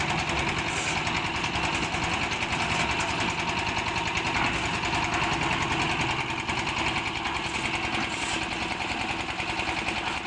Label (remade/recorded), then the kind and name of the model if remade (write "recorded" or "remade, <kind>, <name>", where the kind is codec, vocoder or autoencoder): recorded